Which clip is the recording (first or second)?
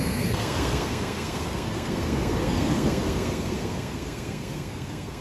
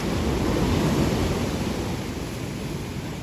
second